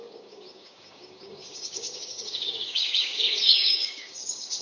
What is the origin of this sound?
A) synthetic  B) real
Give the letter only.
A